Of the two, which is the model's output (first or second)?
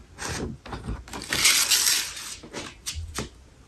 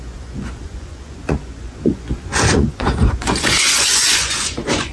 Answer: second